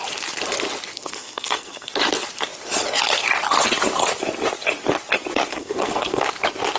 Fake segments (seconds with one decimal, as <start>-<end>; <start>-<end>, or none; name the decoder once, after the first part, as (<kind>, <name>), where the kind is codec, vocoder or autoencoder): 0.9-1.9 (codec, SNAC); 5.5-6.2

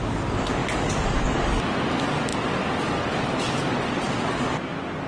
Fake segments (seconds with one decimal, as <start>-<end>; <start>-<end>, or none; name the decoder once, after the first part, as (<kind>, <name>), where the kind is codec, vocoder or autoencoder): 2.3-3.4 (vocoder, BigVGAN v2)

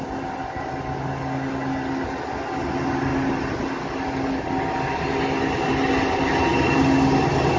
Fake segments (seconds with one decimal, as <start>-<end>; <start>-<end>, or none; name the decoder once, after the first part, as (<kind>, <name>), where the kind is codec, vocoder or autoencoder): none

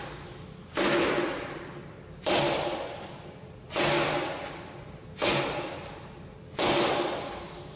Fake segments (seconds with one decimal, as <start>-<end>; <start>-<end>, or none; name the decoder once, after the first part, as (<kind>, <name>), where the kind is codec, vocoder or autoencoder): none

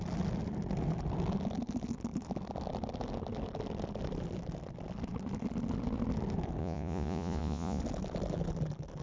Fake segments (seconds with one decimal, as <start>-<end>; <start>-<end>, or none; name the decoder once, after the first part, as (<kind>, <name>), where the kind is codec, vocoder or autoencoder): 6.6-7.8 (vocoder, Vocos)

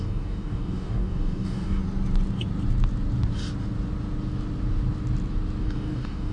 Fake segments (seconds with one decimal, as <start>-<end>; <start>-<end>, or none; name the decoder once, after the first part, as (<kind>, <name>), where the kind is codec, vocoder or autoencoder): 0.0-1.8 (codec, DAC); 5.6-6.3

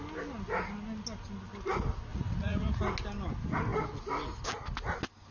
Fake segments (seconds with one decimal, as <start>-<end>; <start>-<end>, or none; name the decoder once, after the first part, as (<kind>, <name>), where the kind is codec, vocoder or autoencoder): 2.1-2.8 (vocoder, Vocos)

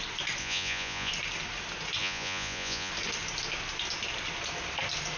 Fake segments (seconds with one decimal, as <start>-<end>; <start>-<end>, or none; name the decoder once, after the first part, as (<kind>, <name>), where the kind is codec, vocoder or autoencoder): 0.4-1.1 (vocoder, Vocos); 2.0-2.9